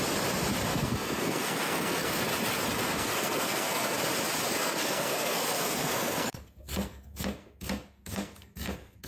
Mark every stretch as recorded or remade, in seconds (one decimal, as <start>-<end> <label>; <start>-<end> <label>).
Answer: 0.0-0.7 recorded; 0.7-2.2 remade; 2.2-2.9 recorded; 2.9-4.0 remade; 4.0-4.5 recorded; 4.5-9.1 remade